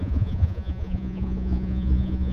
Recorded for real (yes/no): no